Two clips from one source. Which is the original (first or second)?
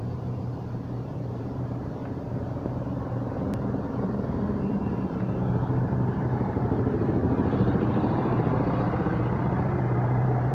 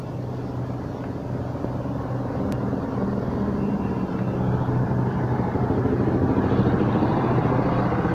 second